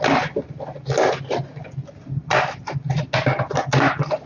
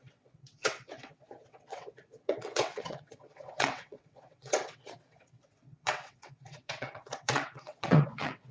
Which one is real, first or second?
first